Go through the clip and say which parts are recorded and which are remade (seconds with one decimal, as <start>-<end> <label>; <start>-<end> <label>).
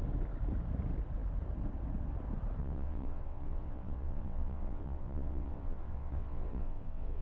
0.0-2.6 recorded; 2.6-7.2 remade